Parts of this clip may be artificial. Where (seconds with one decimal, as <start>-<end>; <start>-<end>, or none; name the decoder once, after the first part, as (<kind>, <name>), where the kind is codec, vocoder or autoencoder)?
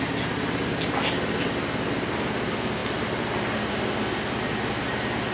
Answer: none